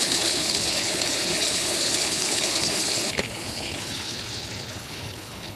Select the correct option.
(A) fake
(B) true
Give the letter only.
A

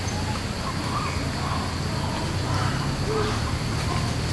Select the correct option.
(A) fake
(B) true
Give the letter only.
B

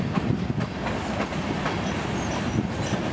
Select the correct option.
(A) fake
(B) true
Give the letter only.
B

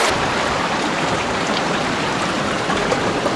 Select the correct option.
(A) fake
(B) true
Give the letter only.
B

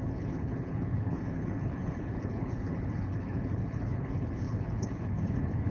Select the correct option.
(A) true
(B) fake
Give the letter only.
B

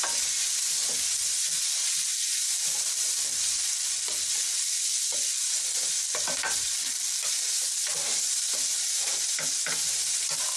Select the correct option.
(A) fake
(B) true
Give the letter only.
B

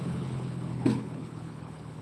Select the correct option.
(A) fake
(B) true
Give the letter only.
A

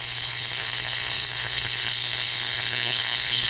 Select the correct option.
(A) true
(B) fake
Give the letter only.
B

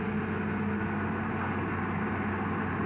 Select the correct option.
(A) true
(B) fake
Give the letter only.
A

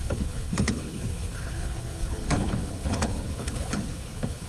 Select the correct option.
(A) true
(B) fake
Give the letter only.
B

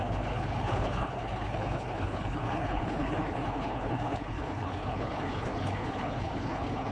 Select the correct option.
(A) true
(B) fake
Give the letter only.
B